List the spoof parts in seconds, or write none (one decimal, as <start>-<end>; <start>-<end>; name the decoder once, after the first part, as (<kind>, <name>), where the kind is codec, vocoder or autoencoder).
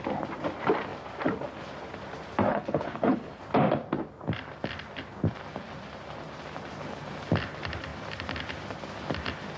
2.5-3.4 (codec, HILCodec)